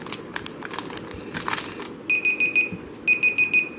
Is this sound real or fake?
real